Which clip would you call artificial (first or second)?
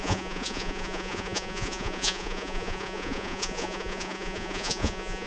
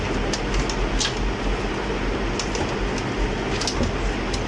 first